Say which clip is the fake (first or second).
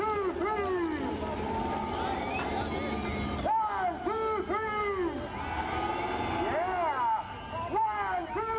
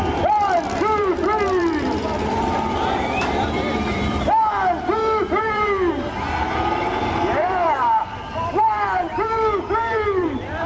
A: second